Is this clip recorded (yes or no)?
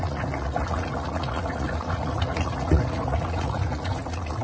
no